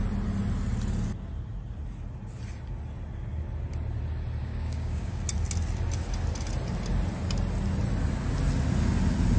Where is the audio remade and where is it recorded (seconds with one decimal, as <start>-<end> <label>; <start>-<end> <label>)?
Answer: 0.0-4.4 recorded; 4.4-5.2 remade; 5.2-9.4 recorded